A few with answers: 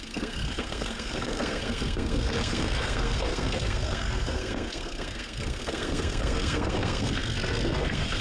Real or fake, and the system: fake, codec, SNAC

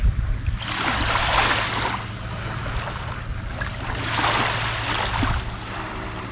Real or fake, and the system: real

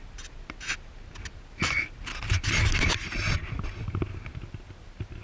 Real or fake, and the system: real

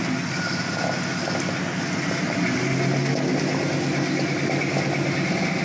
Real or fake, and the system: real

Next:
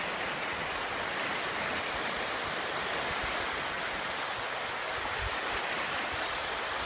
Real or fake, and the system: real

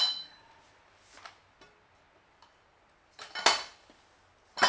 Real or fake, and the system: real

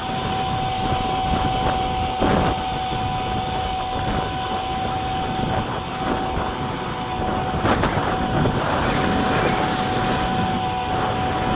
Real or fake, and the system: real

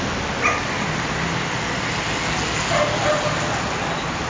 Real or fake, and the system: real